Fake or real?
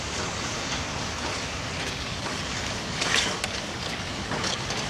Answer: fake